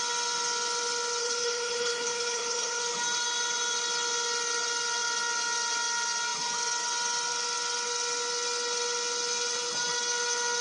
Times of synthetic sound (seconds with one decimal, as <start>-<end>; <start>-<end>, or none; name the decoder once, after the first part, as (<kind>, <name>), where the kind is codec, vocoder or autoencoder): 1.2-2.8 (codec, HILCodec)